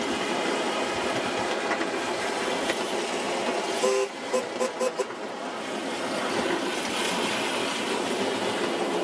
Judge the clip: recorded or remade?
recorded